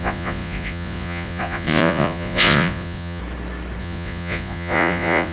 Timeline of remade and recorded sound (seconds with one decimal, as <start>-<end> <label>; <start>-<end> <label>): 0.0-3.2 remade; 3.2-3.8 recorded; 3.8-5.3 remade